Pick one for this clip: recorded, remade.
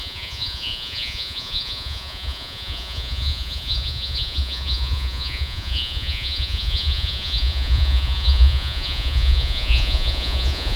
remade